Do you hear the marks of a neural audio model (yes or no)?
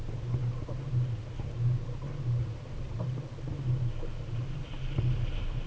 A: no